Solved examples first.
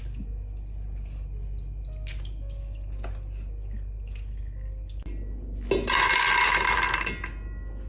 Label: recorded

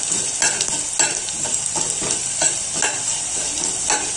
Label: recorded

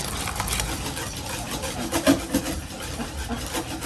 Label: recorded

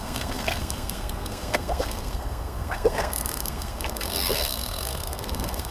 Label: remade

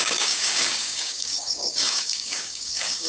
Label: remade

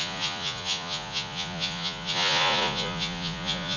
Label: remade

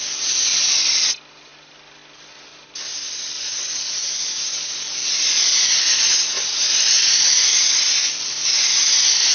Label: recorded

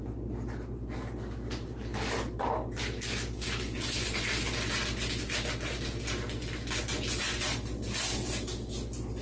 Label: recorded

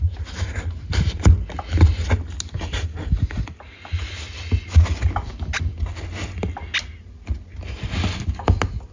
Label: recorded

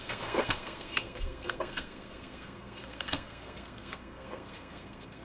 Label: remade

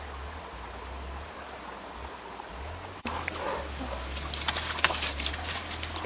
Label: recorded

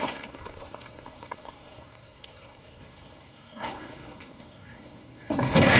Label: remade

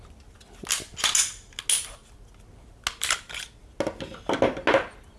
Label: recorded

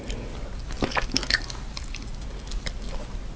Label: recorded